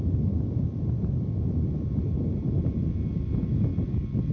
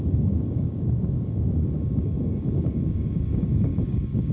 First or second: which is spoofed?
second